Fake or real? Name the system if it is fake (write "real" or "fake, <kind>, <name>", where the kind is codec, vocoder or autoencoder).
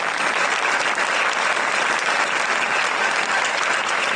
real